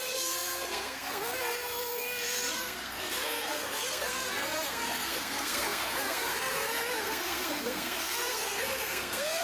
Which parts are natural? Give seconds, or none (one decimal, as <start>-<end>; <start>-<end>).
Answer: none